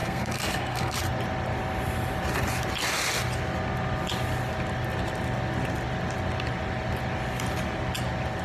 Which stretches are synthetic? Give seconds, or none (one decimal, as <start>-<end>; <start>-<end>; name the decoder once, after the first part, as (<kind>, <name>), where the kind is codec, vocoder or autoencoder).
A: 0.0-1.0 (codec, SNAC)